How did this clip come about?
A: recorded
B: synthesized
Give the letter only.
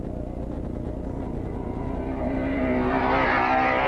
A